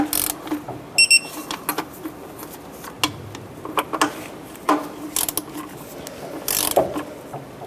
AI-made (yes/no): no